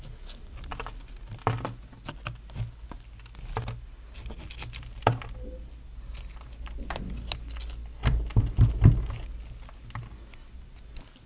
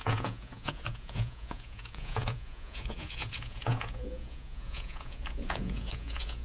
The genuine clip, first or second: first